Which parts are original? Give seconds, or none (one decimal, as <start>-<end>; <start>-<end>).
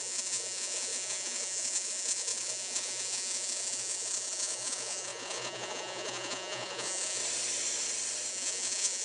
7.2-8.3